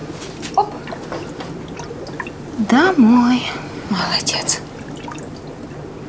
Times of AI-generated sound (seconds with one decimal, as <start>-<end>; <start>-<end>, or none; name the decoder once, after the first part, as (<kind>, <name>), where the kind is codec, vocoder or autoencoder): none